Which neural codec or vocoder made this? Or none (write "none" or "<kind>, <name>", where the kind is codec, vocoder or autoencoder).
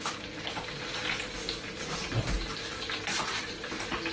none